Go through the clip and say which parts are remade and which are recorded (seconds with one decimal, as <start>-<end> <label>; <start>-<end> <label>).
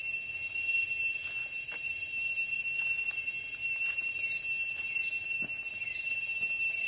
0.0-1.4 recorded; 1.4-2.5 remade; 2.5-3.6 recorded; 3.6-4.4 remade; 4.4-6.9 recorded